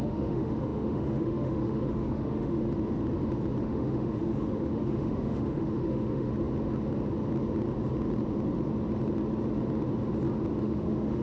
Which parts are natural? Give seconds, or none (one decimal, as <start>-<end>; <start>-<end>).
2.6-3.6; 6.3-10.6